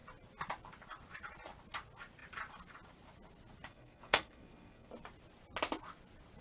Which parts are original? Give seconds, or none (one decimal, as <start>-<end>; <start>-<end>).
0.0-3.7; 4.9-6.4